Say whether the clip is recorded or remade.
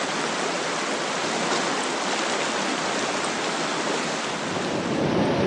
recorded